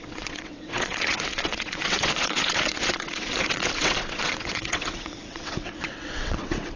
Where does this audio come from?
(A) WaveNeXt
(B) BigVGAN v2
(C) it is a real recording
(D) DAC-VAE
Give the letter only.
A